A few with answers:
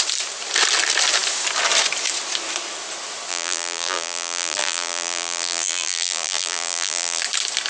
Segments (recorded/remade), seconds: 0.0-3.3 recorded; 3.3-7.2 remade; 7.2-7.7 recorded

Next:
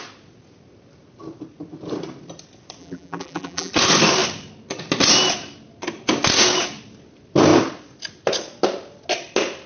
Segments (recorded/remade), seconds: 0.0-2.8 recorded; 2.8-3.7 remade; 3.7-9.7 recorded

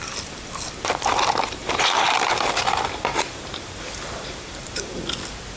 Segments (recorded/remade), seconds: 0.0-1.6 recorded; 1.6-5.0 remade; 5.0-5.6 recorded